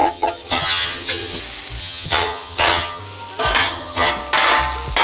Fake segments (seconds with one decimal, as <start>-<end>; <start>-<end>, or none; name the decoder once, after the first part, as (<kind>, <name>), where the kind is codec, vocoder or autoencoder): 0.0-1.4 (vocoder, HiFi-GAN); 1.8-3.0; 3.6-4.1